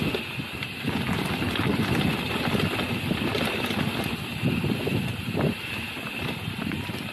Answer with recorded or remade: recorded